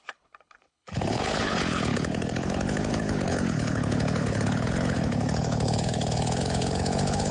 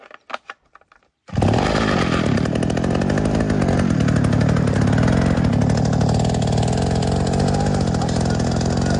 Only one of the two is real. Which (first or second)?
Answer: second